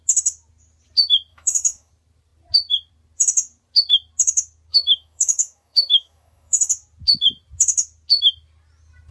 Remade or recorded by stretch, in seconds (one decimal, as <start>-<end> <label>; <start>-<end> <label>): 0.0-1.3 recorded; 1.3-1.9 remade; 1.9-4.7 recorded; 4.7-6.7 remade; 6.7-9.1 recorded